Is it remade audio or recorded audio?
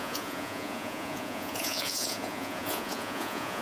remade